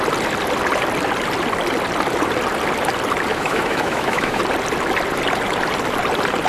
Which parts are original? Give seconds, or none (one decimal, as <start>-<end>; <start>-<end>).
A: 0.0-3.3; 4.4-6.5